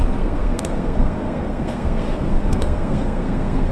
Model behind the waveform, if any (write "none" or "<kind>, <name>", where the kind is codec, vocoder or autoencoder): codec, SNAC